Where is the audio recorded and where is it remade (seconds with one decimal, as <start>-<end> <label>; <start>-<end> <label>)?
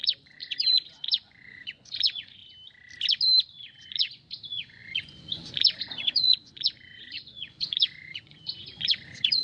0.0-2.4 remade; 2.4-3.5 recorded; 3.5-9.4 remade